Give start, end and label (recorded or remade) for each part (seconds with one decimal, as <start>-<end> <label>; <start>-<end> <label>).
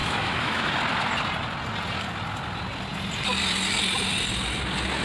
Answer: 0.0-0.7 remade; 0.7-5.0 recorded